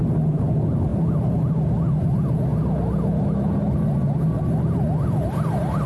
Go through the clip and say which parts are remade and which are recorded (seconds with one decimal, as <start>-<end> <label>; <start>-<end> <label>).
0.0-5.9 recorded